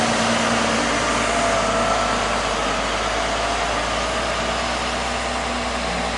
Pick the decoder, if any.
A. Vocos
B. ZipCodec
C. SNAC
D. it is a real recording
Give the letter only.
D